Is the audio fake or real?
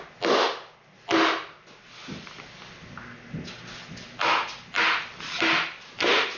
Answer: real